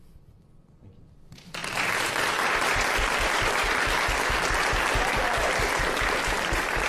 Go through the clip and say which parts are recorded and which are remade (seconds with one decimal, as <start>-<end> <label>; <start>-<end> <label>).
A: 0.0-6.9 recorded

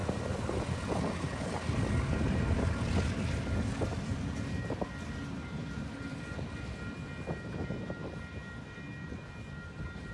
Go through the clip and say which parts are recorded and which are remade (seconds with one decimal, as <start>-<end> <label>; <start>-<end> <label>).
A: 0.0-5.6 recorded; 5.6-6.8 remade; 6.8-10.1 recorded

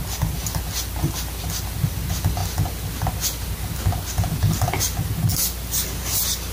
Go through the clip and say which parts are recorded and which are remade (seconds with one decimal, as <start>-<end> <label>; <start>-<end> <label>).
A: 0.0-6.5 recorded

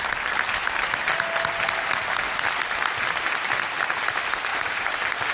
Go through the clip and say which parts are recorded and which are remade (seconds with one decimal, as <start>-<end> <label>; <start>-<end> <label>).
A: 0.0-4.5 recorded; 4.5-5.3 remade

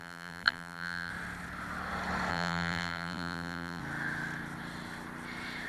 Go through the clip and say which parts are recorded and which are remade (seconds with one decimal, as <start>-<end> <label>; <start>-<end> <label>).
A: 0.0-1.1 remade; 1.1-2.3 recorded; 2.3-3.8 remade; 3.8-5.7 recorded